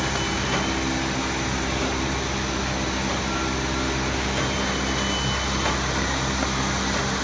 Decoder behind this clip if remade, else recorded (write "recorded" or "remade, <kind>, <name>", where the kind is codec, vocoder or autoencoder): recorded